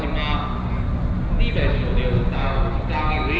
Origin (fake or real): real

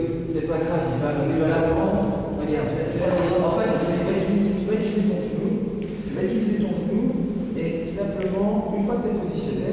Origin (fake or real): real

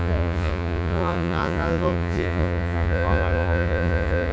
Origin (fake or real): fake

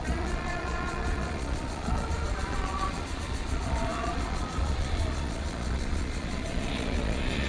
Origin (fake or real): fake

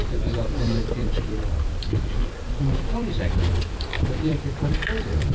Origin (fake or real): fake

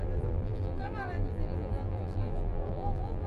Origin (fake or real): fake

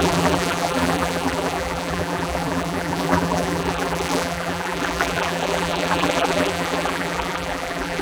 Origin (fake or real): fake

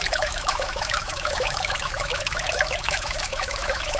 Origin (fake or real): fake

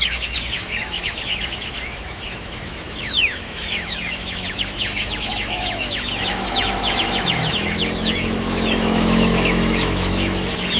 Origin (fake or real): fake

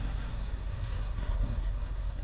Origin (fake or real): fake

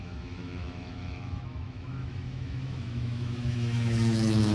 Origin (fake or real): fake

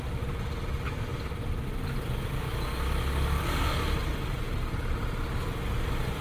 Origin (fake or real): real